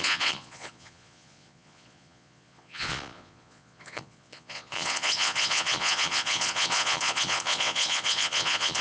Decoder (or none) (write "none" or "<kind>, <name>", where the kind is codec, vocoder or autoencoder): vocoder, Vocos